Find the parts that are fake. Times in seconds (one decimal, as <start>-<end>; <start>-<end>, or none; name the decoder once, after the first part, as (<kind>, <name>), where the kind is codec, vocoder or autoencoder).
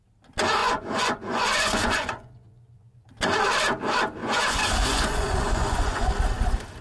0.6-3.1 (vocoder, Vocos); 4.2-6.1